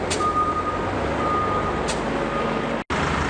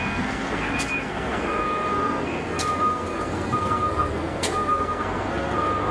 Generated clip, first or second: second